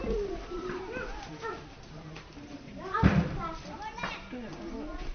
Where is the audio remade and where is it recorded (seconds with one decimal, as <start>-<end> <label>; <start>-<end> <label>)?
0.0-3.1 remade; 3.1-5.1 recorded